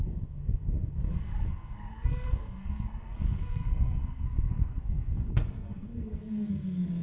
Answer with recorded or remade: remade